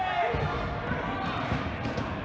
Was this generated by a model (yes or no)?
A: no